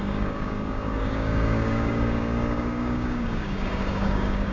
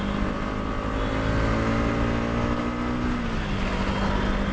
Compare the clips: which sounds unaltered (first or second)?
second